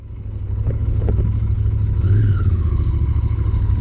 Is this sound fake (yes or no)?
yes